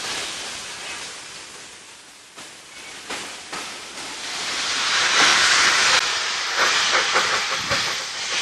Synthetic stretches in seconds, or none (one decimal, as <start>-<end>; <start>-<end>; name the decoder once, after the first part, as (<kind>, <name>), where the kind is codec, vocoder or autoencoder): 3.3-4.2 (vocoder, BigVGAN v2); 5.3-8.0